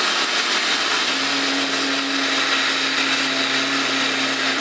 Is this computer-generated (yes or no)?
no